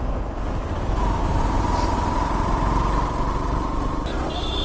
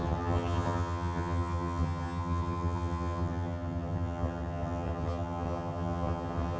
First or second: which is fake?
second